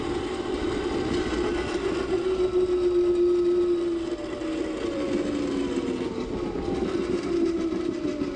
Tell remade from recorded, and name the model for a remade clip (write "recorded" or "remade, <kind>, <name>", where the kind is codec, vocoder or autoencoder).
recorded